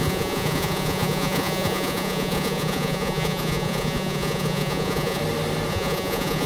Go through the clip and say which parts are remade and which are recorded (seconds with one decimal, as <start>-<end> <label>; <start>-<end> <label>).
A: 0.0-5.2 remade; 5.2-5.7 recorded; 5.7-6.5 remade